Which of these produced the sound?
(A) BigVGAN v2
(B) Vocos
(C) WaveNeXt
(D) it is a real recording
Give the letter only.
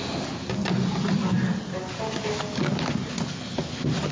D